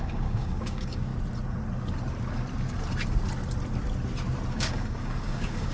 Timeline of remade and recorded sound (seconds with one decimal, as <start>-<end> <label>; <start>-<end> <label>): 0.0-1.1 remade; 1.1-4.5 recorded; 4.5-5.7 remade